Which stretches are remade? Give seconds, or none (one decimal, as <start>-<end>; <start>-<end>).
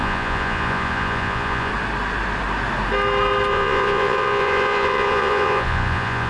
0.0-1.7; 3.5-6.3